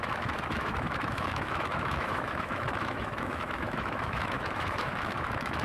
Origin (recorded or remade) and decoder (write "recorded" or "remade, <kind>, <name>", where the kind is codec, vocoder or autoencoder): remade, autoencoder, DAC-VAE